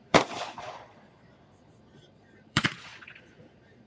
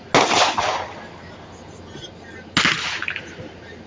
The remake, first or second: first